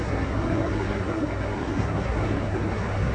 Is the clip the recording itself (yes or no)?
no